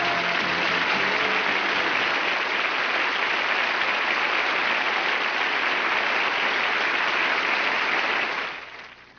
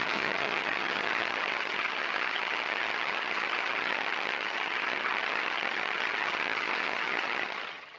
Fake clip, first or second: second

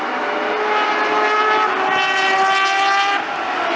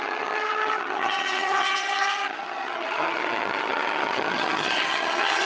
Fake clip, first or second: second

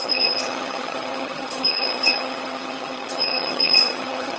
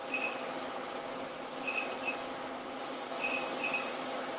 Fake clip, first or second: first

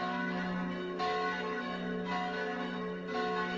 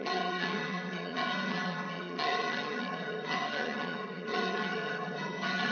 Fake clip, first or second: second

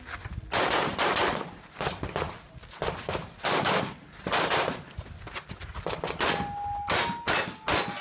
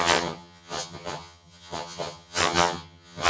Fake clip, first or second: second